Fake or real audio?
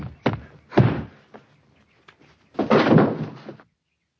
real